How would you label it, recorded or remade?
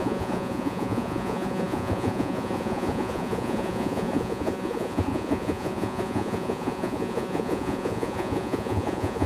remade